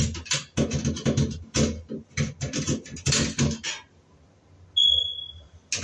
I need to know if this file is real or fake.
real